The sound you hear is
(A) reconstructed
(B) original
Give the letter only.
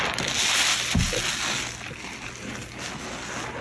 B